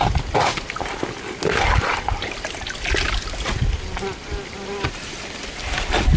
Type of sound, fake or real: real